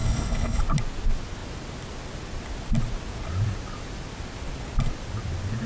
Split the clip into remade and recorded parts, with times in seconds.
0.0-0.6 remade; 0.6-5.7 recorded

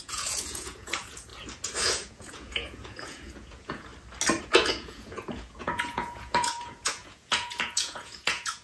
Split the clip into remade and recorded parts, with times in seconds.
0.0-1.3 remade; 1.3-1.8 recorded; 1.8-3.9 remade; 3.9-4.4 recorded; 4.4-8.6 remade

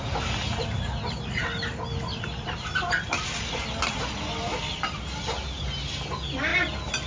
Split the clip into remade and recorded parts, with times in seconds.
0.0-7.1 recorded

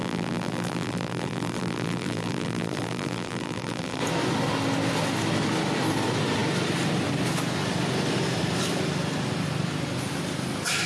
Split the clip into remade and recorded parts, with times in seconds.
0.0-4.0 remade; 4.0-10.9 recorded

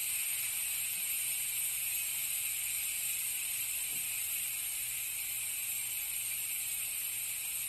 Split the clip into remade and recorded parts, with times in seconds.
0.0-0.7 recorded; 0.7-1.9 remade; 1.9-6.5 recorded; 6.5-7.7 remade